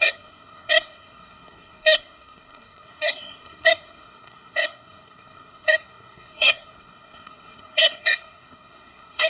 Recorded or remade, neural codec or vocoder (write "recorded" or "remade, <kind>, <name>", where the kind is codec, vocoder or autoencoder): remade, codec, SNAC